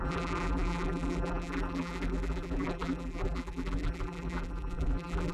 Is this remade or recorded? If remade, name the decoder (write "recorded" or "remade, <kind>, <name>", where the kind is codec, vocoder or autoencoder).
remade, vocoder, BigVGAN v2